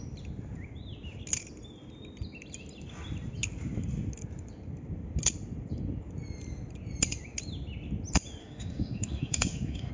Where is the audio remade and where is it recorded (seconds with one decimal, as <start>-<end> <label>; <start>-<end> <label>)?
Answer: 0.0-8.4 recorded; 8.4-9.9 remade